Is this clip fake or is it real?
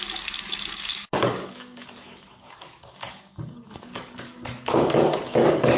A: fake